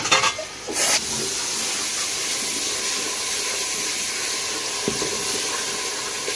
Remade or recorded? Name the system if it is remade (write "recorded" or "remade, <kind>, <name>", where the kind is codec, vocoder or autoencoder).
recorded